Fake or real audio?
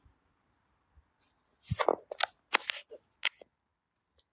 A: real